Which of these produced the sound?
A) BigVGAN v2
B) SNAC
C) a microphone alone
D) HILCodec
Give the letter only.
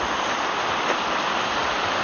C